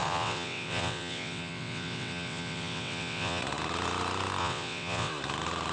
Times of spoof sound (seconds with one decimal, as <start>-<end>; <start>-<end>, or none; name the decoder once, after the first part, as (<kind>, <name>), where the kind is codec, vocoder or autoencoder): 0.0-3.4 (vocoder, WaveNeXt); 4.4-5.1

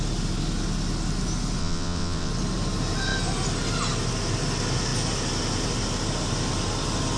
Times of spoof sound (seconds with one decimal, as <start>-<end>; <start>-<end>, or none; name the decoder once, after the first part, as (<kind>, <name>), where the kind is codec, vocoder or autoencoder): 1.6-2.3 (vocoder, WaveNeXt)

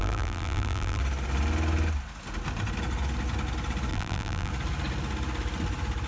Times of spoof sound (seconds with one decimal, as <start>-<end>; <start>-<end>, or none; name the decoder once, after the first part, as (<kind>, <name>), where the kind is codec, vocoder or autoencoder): 0.0-1.0 (vocoder, BigVGAN v2); 3.9-4.5

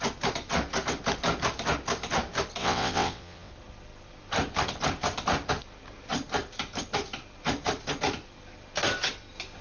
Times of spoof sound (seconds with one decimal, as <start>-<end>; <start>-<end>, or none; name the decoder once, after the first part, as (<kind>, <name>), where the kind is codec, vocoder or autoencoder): 2.6-3.5 (vocoder, WaveNeXt)

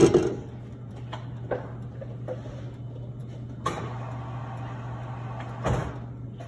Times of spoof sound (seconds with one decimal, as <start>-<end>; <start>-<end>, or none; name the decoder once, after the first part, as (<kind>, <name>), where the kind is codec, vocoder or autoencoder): none

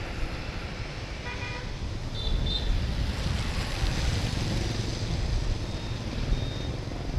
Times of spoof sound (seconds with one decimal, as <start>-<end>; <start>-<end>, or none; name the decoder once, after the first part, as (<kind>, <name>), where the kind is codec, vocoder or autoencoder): none

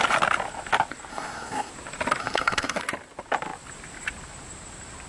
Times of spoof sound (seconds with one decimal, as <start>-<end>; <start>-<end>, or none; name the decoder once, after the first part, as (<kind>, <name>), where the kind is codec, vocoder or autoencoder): 1.1-1.7 (codec, SNAC); 2.2-2.8

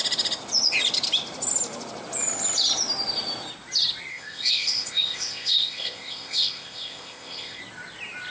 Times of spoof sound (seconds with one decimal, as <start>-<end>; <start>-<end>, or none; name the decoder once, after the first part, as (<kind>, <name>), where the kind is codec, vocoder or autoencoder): 4.1-7.6 (codec, ZipCodec)